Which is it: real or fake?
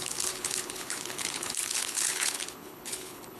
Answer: fake